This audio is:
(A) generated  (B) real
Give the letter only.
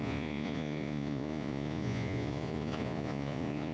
A